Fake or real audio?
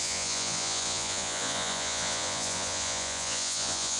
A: fake